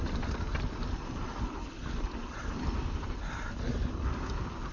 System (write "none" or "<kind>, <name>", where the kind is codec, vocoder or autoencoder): none